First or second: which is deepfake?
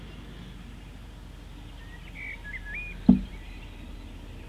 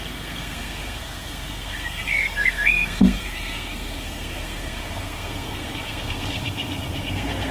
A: second